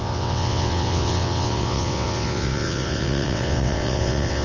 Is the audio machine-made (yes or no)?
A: yes